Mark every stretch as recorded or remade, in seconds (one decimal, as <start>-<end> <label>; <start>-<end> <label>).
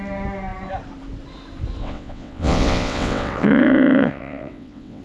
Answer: 0.0-1.8 recorded; 1.8-5.0 remade